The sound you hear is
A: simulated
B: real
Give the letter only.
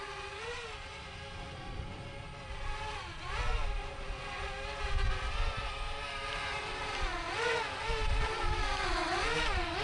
B